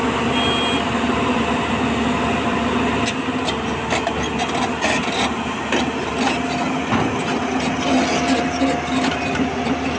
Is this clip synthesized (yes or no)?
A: no